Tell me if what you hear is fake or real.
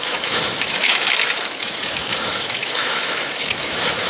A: fake